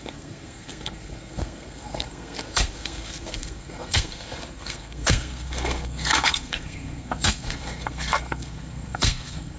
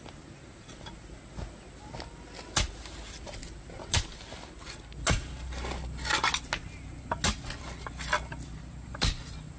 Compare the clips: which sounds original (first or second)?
second